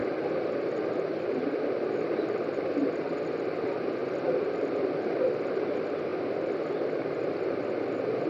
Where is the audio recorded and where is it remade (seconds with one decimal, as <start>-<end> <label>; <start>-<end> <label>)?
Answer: 0.0-4.0 recorded; 4.0-5.0 remade; 5.0-8.3 recorded